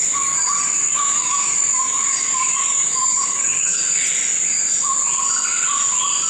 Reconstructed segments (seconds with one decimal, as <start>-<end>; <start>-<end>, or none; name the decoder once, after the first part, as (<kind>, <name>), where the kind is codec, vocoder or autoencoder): 0.0-3.8 (codec, DAC)

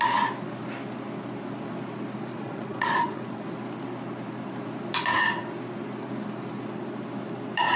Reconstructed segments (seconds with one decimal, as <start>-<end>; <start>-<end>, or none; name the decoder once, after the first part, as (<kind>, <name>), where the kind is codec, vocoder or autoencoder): 2.3-3.4 (vocoder, Vocos)

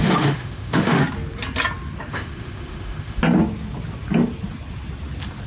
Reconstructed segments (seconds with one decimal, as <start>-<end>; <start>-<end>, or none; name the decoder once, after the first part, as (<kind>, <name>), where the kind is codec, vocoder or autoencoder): 0.0-1.0 (autoencoder, DAC-VAE); 2.1-3.2

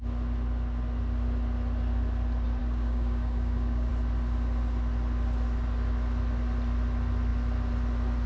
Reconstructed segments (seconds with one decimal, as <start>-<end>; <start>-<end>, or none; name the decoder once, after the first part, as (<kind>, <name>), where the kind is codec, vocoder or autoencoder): 2.6-3.9 (codec, DAC)

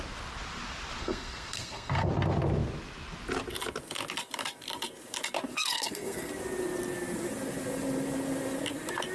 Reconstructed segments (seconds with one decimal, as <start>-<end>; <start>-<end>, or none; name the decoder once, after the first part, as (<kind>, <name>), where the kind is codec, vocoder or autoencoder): 1.0-2.1 (codec, SNAC); 5.5-6.3

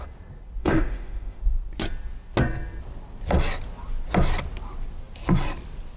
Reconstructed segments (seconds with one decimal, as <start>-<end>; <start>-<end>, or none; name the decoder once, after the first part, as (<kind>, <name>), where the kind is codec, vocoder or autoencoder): 0.6-1.4 (autoencoder, DAC-VAE)